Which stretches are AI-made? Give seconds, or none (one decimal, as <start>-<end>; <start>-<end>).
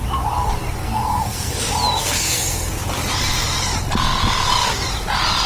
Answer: 0.8-1.6; 2.0-2.7